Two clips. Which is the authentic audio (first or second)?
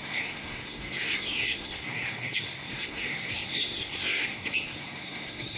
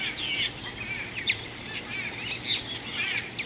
second